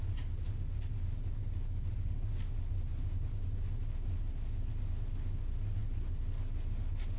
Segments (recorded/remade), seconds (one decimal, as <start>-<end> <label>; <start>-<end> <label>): 0.0-7.2 recorded